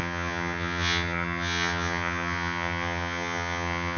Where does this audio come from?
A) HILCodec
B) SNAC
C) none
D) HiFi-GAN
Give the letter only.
D